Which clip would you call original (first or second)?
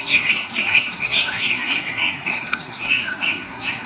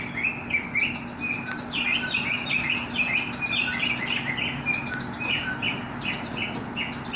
second